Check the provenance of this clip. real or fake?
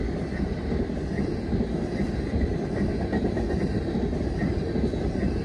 real